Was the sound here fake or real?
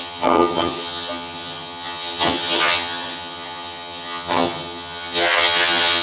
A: fake